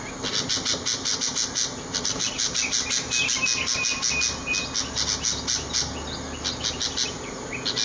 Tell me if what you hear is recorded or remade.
recorded